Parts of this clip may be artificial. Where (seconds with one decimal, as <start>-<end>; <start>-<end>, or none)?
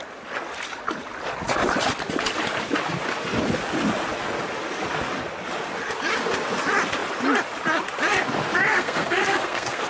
8.7-9.9